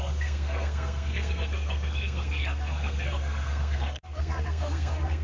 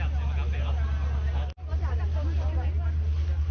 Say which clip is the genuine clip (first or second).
second